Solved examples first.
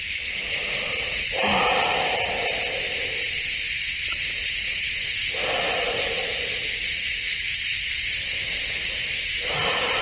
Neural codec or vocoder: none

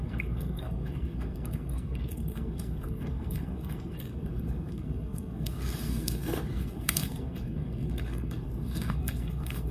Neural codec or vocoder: codec, SNAC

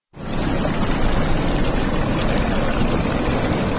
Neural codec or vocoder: none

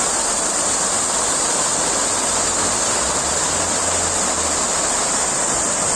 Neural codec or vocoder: none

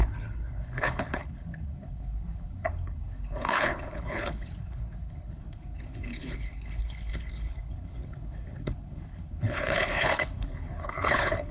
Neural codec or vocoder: codec, HILCodec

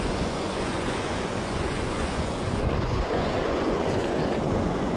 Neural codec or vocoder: vocoder, Vocos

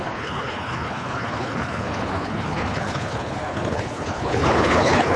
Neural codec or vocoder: codec, HILCodec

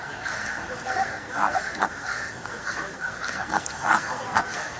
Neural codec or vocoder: codec, SNAC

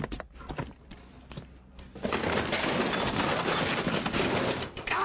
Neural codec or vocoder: none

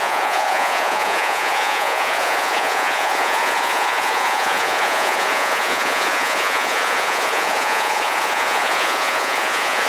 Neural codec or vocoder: vocoder, Vocos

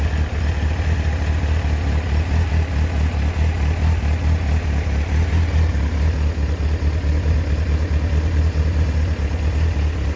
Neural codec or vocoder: none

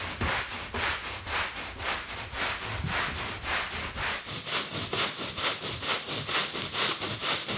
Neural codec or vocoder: none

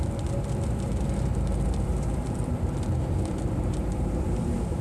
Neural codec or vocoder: vocoder, BigVGAN v2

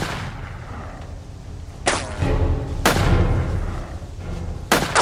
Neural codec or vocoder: none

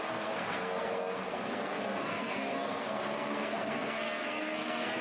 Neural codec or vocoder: codec, SNAC